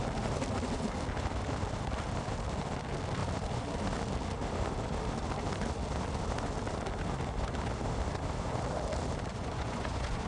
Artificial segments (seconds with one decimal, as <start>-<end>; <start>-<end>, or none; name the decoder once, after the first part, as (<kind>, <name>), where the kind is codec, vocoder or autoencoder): 9.3-10.3 (vocoder, Vocos)